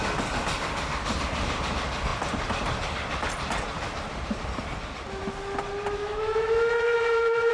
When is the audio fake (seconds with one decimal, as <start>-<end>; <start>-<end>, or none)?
6.0-7.5